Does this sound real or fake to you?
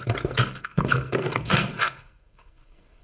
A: fake